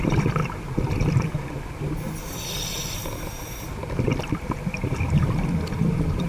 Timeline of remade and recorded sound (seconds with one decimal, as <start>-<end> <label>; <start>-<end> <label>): 0.0-0.4 remade; 0.4-2.9 recorded; 2.9-4.1 remade; 4.1-6.3 recorded